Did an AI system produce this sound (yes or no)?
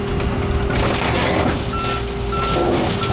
no